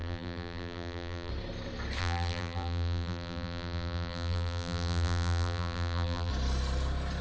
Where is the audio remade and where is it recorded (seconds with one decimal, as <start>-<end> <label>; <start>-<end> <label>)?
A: 0.0-1.3 remade; 1.3-2.0 recorded; 2.0-6.3 remade; 6.3-7.2 recorded